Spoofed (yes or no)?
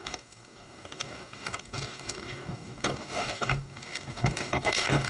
yes